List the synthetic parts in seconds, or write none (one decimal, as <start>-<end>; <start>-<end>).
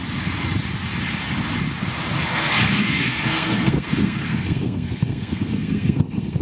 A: 2.3-6.4